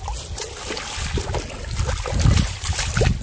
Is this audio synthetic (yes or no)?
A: no